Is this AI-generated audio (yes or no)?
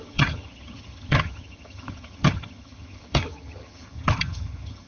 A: yes